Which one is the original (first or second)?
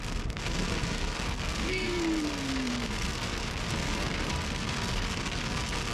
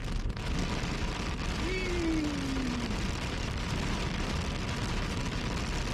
second